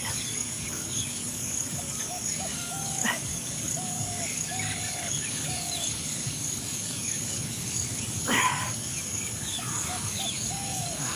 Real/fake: fake